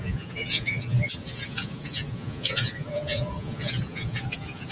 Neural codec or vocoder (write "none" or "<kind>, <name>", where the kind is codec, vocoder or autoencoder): vocoder, Vocos